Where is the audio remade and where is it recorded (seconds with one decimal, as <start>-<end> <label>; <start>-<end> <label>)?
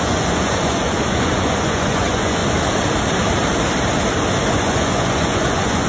0.0-2.4 remade; 2.4-4.4 recorded; 4.4-5.9 remade